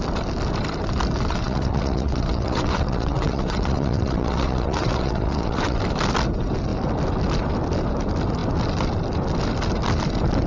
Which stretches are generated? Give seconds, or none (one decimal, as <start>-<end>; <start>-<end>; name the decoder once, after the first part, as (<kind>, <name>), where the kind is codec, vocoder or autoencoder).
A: 1.3-5.8 (vocoder, WaveNeXt)